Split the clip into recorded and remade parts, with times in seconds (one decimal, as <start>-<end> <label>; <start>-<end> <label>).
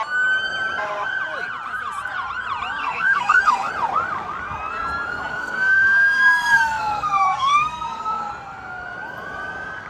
0.0-2.8 recorded; 2.8-3.7 remade; 3.7-5.3 recorded; 5.3-8.3 remade; 8.3-9.9 recorded